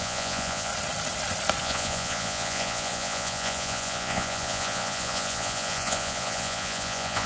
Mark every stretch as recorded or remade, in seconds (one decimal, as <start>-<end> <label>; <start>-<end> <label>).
0.0-0.7 remade; 0.7-1.6 recorded; 1.6-7.3 remade